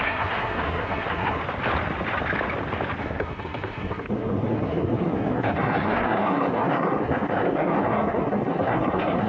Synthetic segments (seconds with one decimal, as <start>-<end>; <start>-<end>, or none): 0.0-1.4; 3.0-9.3